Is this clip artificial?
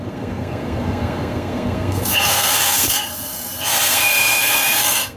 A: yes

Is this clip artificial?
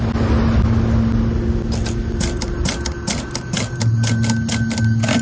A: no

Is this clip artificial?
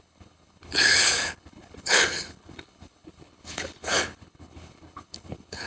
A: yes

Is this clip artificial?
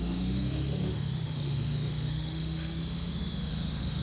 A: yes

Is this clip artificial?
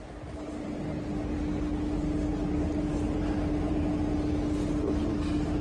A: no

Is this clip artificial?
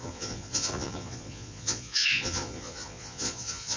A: yes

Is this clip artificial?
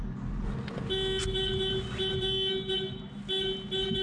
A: no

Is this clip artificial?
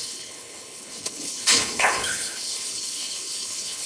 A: yes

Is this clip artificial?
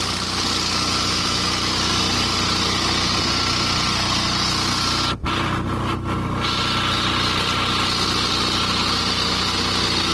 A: no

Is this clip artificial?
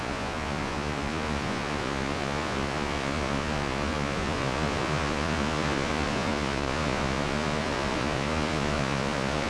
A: yes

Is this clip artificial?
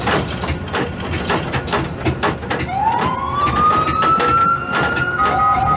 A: no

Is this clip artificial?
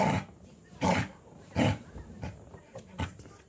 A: yes